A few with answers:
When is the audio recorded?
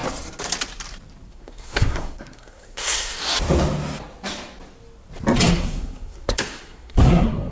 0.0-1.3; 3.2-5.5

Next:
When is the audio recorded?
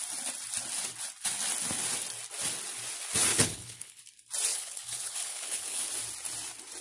0.0-3.3; 4.0-4.5; 5.9-6.8